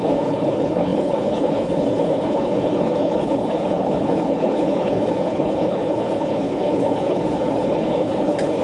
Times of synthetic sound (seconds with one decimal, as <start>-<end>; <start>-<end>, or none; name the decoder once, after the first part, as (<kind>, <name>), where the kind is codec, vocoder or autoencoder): 0.0-8.6 (codec, HILCodec)